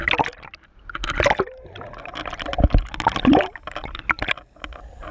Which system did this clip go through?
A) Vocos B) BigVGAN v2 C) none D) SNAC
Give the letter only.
C